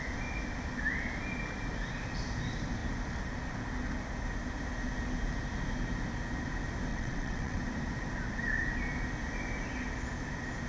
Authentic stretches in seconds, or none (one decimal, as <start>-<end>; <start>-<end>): 0.0-6.9; 7.6-10.7